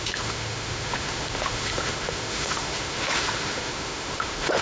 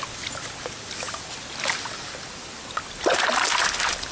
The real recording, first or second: second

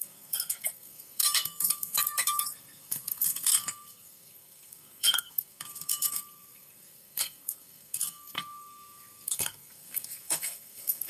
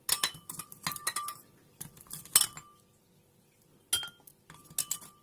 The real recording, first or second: second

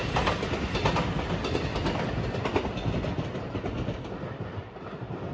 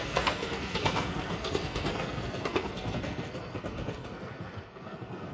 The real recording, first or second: first